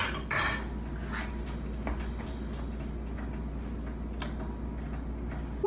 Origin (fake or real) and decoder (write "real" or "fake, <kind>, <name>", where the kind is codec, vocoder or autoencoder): real